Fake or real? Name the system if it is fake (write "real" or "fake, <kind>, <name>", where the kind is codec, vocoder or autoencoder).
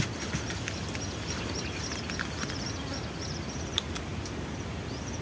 real